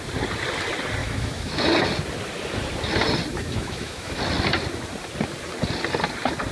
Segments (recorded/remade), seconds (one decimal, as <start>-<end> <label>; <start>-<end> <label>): 0.0-1.0 recorded; 1.0-1.6 remade; 1.6-3.3 recorded; 3.3-4.2 remade; 4.2-6.5 recorded